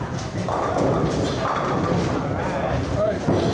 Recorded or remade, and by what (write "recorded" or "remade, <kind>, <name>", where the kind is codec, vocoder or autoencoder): recorded